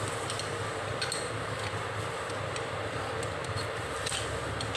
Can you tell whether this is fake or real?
real